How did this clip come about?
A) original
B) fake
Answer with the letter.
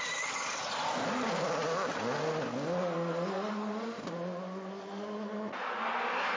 A